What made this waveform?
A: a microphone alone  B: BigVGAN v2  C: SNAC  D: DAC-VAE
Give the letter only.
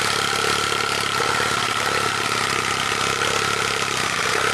A